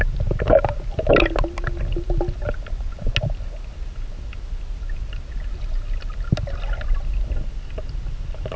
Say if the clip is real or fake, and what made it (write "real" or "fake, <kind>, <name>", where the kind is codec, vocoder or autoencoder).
real